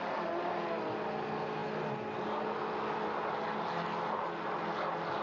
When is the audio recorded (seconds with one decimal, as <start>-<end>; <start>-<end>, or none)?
0.0-5.2